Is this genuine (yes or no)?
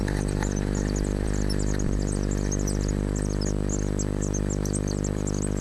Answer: yes